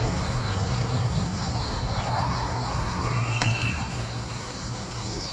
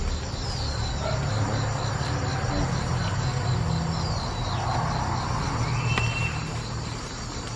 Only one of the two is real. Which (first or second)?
second